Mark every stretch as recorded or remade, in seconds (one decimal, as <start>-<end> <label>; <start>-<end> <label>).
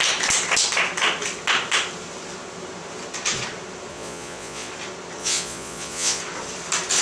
0.0-3.9 recorded; 3.9-4.7 remade; 4.7-5.2 recorded; 5.2-6.2 remade; 6.2-7.0 recorded